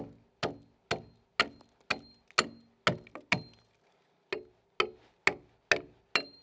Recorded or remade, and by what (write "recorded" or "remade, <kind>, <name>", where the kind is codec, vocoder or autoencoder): recorded